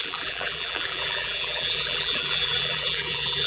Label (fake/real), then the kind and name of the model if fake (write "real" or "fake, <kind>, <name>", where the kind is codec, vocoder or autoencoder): fake, vocoder, BigVGAN v2